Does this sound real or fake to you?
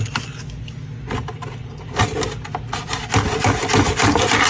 real